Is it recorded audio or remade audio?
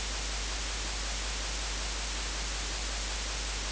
recorded